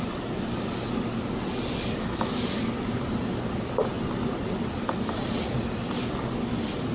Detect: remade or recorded recorded